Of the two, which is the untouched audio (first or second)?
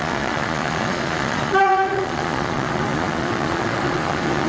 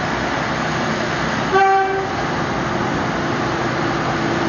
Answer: second